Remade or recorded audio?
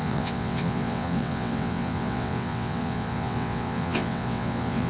remade